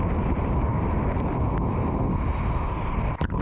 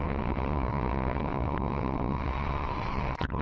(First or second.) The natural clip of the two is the first